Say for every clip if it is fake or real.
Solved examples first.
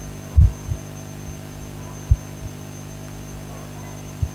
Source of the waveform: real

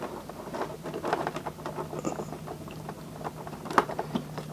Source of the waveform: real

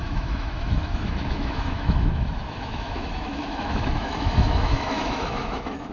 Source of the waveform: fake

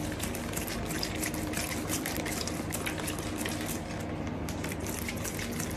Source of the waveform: real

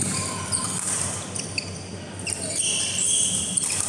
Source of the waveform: real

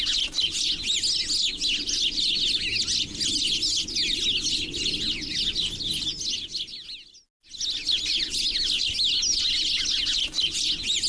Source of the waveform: real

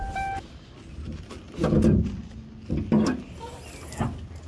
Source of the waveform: real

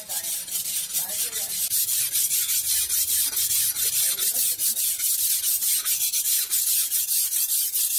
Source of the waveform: real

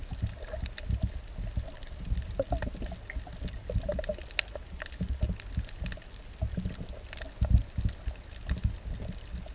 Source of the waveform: real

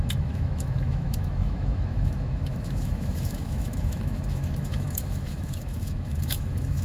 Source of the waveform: fake